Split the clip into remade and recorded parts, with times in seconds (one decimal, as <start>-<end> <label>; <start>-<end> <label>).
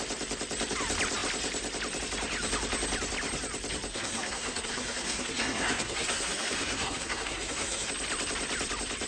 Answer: 0.0-3.9 recorded; 3.9-7.9 remade; 7.9-9.1 recorded